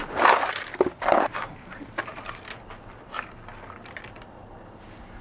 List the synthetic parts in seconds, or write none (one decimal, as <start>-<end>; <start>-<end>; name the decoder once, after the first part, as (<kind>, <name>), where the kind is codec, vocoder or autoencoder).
1.1-1.8 (vocoder, BigVGAN v2)